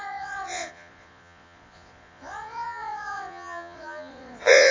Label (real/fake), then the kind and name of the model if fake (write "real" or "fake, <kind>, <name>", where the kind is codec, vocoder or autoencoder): fake, vocoder, Vocos